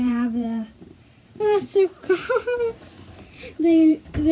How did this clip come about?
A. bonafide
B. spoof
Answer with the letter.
B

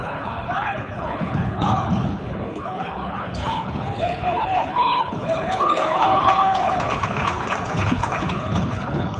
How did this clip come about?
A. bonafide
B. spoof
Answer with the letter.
B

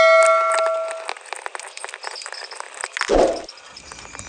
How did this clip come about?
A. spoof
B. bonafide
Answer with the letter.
B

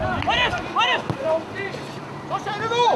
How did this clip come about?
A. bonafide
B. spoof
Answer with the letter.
A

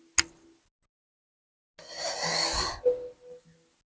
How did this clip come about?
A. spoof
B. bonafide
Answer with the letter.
B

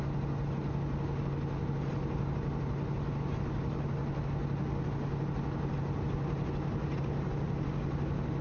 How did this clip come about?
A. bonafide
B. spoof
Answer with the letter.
A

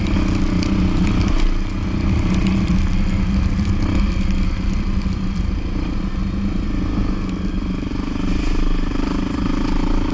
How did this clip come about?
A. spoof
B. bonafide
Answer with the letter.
B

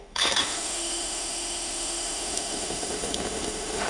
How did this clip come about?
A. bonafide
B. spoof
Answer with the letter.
B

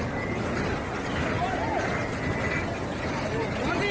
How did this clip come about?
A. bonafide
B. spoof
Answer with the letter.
A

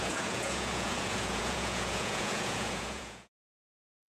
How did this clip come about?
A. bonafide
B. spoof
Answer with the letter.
B